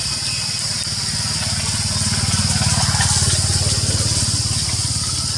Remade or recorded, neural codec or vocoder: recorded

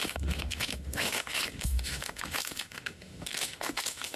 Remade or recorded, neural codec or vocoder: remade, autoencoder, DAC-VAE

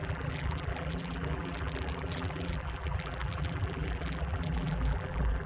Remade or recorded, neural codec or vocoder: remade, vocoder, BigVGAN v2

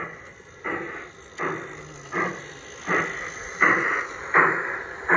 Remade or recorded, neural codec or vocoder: recorded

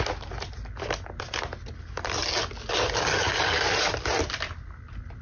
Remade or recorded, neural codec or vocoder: recorded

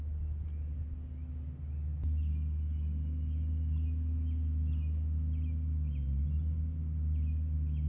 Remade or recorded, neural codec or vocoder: recorded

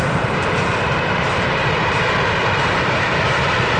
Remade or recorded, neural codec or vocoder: remade, vocoder, BigVGAN v2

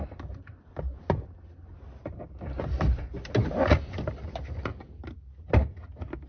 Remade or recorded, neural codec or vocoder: recorded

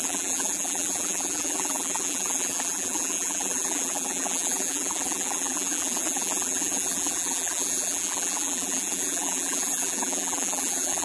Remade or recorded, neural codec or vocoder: remade, vocoder, BigVGAN v2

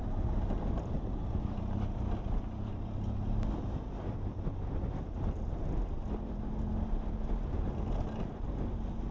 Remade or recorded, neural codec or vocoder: recorded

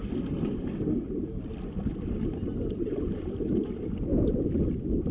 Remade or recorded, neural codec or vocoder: recorded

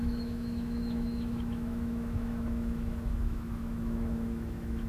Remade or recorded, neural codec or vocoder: remade, autoencoder, DAC-VAE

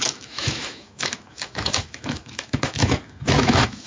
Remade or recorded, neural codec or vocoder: remade, autoencoder, DAC-VAE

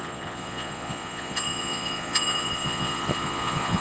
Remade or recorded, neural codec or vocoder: remade, vocoder, Vocos